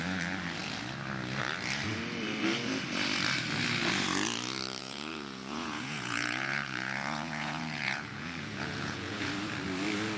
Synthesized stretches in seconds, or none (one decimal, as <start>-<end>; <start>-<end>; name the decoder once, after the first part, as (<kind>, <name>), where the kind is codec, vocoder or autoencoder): 4.8-9.3 (vocoder, Vocos)